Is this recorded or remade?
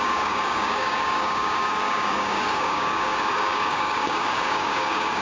remade